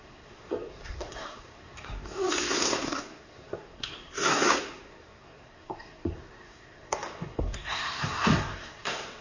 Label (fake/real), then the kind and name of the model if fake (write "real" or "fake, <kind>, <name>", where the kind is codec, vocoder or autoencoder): fake, codec, SNAC